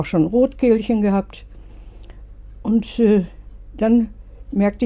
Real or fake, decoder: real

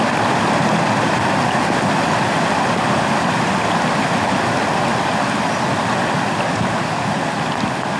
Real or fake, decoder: real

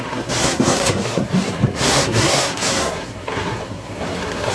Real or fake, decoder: fake, codec, SNAC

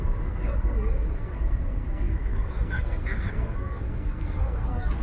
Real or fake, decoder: fake, codec, SNAC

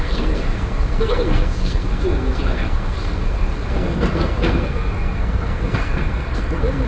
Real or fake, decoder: fake, codec, SNAC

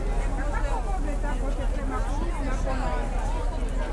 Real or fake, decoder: real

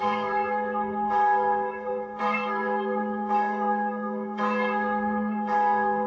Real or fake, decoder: fake, codec, SNAC